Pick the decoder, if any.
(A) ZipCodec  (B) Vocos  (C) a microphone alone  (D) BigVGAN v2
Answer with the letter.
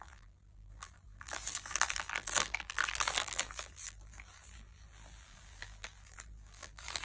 D